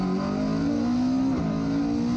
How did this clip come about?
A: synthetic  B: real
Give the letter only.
B